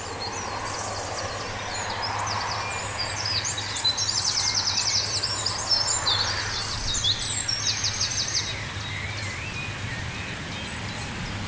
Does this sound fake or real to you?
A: real